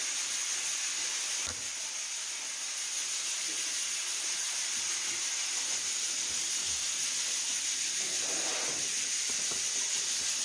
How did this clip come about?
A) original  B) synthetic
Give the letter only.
A